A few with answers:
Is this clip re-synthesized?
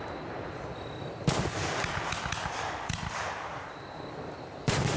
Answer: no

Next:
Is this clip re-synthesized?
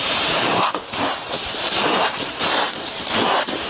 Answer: yes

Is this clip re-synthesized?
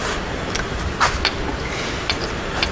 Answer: yes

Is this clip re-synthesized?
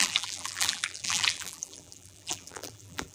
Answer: yes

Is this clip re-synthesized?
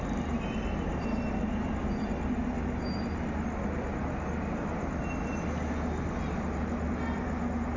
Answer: no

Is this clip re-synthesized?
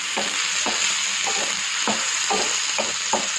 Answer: no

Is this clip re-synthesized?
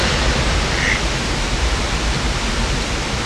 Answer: no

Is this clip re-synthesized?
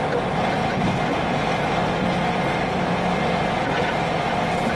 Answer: no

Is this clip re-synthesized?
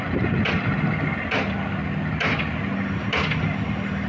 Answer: no